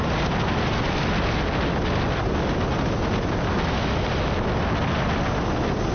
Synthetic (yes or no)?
no